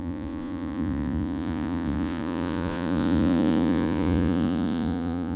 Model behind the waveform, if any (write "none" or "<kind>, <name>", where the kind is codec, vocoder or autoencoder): vocoder, Vocos